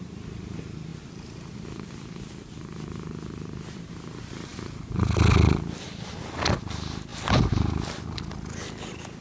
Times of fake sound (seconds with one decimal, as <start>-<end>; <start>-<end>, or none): none